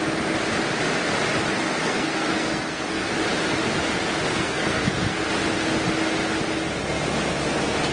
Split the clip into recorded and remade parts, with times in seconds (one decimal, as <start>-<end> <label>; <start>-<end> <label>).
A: 0.0-1.8 recorded; 1.8-3.1 remade; 3.1-4.3 recorded; 4.3-5.3 remade; 5.3-7.9 recorded